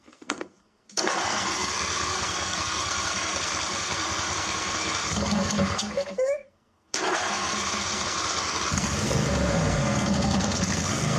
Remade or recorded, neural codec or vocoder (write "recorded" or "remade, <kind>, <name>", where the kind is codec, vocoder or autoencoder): remade, codec, SNAC